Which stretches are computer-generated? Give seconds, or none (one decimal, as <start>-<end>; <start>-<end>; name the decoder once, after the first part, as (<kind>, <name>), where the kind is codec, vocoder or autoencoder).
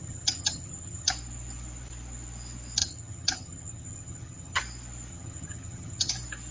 0.0-1.1 (vocoder, HiFi-GAN); 2.8-4.6; 5.1-6.1